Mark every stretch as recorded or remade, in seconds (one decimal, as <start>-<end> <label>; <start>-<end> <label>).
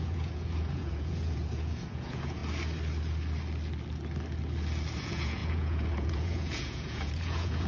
0.0-2.4 remade; 2.4-5.0 recorded; 5.0-7.7 remade